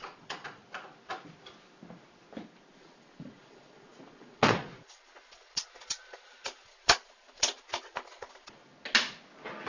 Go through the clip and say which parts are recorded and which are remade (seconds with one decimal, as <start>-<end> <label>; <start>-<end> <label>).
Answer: 0.0-0.6 remade; 0.6-2.7 recorded; 2.7-8.6 remade; 8.6-9.7 recorded